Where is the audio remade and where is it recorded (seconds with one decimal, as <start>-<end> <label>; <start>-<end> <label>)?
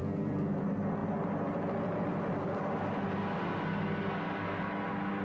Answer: 0.0-0.6 remade; 0.6-5.2 recorded